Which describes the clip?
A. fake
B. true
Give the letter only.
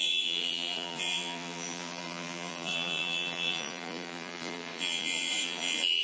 A